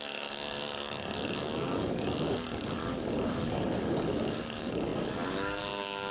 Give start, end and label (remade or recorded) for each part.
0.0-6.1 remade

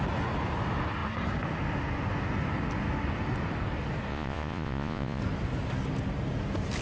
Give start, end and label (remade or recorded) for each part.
0.0-4.1 recorded; 4.1-5.2 remade; 5.2-6.8 recorded